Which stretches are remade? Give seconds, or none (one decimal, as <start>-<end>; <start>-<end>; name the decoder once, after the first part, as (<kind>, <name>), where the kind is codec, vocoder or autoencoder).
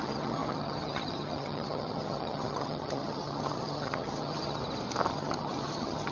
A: 0.0-4.6 (vocoder, HiFi-GAN); 5.1-6.1